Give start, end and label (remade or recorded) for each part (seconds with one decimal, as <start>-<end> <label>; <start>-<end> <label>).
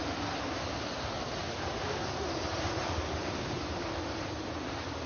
0.0-5.1 recorded